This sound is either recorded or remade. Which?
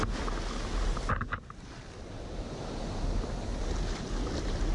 recorded